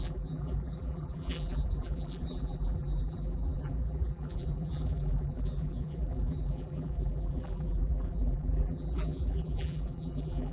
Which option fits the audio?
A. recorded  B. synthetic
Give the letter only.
B